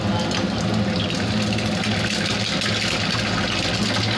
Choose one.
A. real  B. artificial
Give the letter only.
A